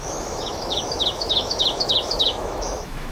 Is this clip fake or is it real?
fake